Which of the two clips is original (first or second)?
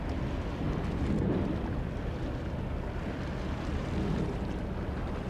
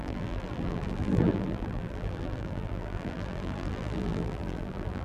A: first